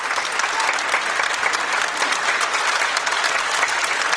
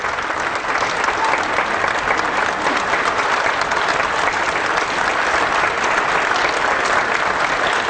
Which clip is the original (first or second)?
second